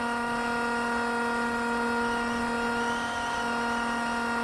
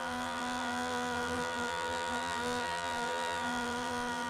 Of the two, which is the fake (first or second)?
second